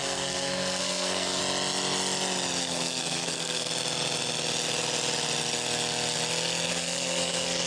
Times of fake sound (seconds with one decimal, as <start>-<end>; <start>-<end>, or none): 0.0-1.4; 2.6-3.7; 6.7-7.7